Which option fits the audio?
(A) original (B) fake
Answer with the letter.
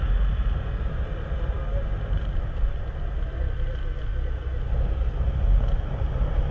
A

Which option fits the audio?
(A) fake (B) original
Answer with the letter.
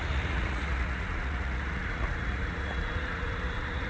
A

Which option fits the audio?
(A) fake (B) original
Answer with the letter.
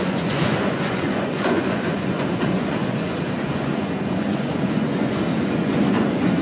A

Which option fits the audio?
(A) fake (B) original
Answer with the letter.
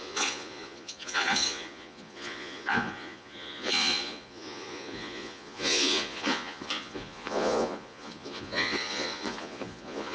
A